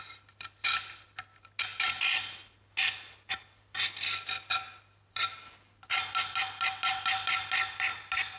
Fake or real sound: real